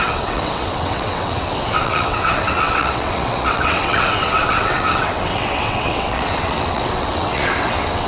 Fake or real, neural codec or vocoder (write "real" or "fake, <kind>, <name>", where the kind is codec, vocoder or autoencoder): fake, vocoder, WaveNeXt